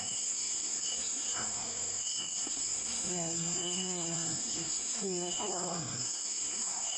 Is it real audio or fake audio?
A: fake